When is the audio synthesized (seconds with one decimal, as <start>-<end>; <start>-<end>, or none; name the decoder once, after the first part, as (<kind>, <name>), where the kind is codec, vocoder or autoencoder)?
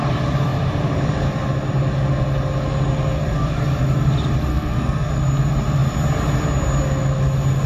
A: 4.5-5.1 (codec, SNAC)